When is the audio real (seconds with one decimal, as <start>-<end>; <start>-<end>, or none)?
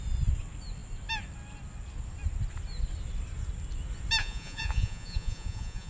0.0-4.2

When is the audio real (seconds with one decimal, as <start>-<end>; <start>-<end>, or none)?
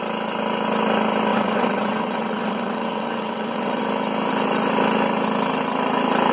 0.0-1.3; 3.8-6.3